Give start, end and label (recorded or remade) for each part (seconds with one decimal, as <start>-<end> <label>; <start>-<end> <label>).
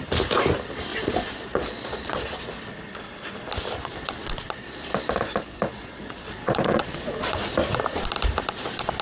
0.0-0.9 recorded; 0.9-2.4 remade; 2.4-3.8 recorded; 3.8-7.5 remade; 7.5-9.0 recorded